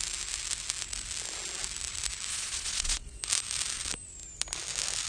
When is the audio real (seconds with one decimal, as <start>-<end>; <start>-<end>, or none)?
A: 0.0-2.3; 3.2-5.1